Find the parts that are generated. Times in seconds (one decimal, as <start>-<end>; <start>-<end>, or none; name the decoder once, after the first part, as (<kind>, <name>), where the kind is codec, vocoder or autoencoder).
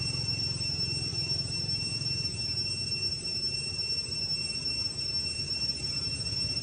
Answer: none